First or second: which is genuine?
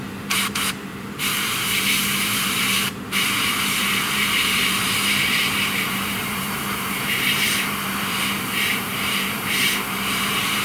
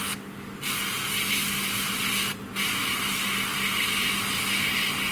second